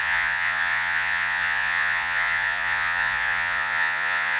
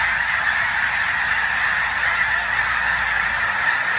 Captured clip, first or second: second